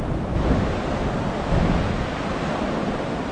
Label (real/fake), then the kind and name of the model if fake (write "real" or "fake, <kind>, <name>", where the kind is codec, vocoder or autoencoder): real